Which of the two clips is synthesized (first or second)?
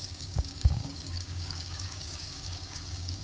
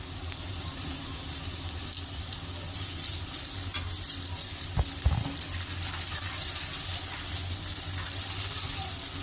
first